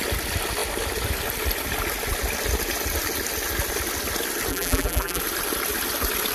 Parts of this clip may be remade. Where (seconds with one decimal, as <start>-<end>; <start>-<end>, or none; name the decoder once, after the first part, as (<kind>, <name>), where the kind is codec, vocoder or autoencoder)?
4.5-5.2 (vocoder, BigVGAN v2)